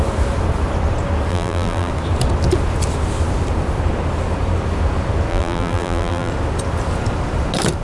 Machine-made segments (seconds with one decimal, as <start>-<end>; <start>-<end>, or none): 1.3-1.9; 5.3-6.3